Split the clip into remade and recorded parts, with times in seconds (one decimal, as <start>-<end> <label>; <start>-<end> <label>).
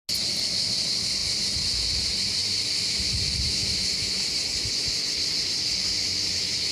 0.0-2.4 recorded; 2.4-3.5 remade; 3.5-6.7 recorded